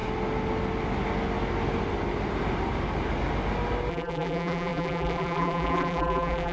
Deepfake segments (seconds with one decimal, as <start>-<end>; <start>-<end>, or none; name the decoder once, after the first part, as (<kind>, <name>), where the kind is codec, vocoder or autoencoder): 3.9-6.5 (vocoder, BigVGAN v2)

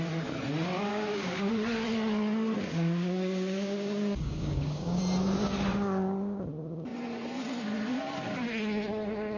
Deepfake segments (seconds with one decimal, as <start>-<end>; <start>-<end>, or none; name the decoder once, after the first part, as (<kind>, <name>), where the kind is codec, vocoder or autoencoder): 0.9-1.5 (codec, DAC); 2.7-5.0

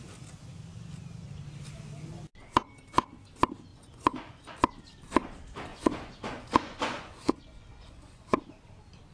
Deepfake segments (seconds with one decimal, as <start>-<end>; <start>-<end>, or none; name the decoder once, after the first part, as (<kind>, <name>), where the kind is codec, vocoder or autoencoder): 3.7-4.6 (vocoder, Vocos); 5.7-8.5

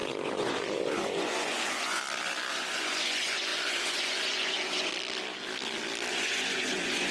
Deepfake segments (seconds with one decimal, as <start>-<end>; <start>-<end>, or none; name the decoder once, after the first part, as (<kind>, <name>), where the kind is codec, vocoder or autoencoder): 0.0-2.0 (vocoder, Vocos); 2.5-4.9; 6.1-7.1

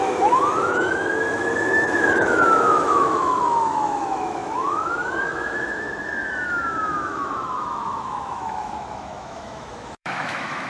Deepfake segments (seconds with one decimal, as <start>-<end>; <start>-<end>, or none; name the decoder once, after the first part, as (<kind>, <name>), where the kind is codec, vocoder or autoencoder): 0.0-10.7 (autoencoder, DAC-VAE)

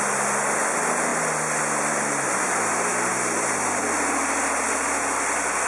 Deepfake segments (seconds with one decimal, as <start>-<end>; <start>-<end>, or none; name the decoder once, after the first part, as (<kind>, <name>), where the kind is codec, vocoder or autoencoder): 3.1-3.8 (vocoder, BigVGAN v2)

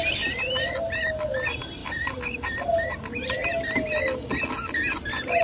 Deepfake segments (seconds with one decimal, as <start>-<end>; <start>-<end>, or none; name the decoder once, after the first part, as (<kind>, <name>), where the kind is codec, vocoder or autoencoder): none